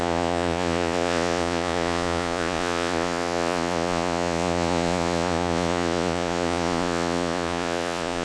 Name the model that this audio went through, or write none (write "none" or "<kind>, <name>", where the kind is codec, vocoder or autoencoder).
vocoder, Vocos